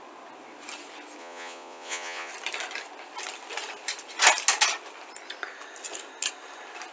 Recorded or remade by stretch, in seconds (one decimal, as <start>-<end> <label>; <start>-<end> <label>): 0.0-1.2 recorded; 1.2-2.3 remade; 2.3-6.9 recorded